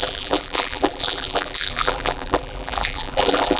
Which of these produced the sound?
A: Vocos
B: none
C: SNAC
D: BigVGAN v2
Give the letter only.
D